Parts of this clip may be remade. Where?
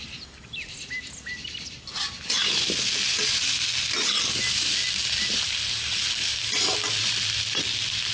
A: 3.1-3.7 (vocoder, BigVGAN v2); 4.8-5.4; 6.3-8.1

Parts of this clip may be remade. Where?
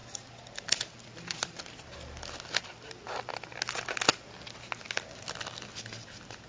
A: none